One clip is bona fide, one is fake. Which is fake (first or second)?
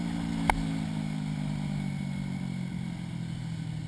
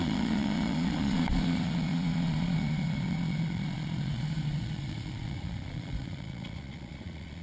second